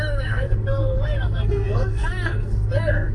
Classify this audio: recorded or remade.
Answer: remade